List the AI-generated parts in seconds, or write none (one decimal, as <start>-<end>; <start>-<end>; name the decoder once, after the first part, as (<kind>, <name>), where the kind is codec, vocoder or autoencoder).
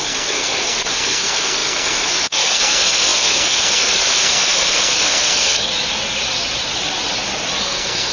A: 0.0-5.7 (codec, SNAC); 7.6-8.1